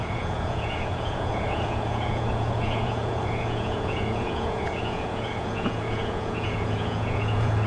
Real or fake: fake